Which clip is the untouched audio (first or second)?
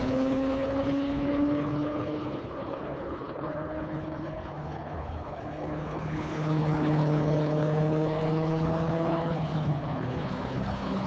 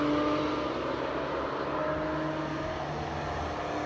second